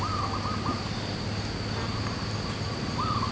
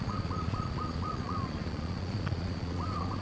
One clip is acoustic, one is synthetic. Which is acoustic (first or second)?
first